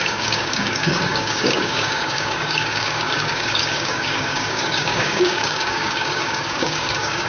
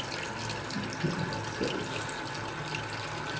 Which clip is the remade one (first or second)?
first